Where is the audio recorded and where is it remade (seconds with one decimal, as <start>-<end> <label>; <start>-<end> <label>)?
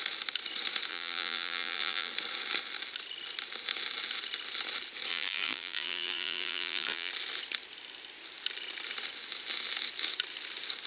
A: 0.0-0.9 recorded; 0.9-2.1 remade; 2.1-5.1 recorded; 5.1-7.1 remade; 7.1-10.9 recorded